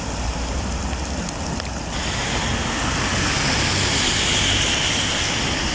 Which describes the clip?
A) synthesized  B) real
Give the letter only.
B